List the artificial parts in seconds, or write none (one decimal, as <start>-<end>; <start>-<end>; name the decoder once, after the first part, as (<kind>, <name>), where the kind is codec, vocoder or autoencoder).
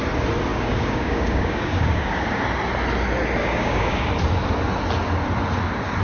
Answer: 0.5-2.4 (codec, DAC); 3.4-4.1